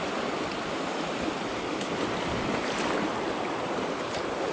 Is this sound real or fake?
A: real